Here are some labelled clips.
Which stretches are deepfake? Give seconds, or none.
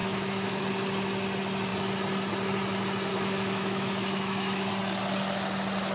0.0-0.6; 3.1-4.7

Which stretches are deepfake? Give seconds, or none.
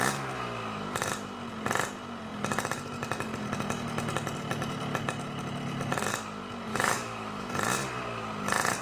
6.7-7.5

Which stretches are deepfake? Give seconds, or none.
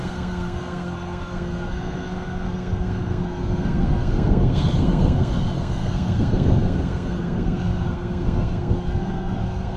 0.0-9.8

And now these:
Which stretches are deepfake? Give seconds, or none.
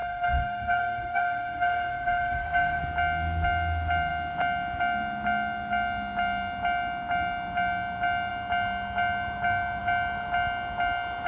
0.0-2.8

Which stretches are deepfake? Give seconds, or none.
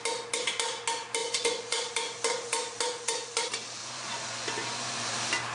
1.2-1.9; 3.8-5.1